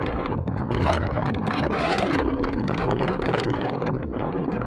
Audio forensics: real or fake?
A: fake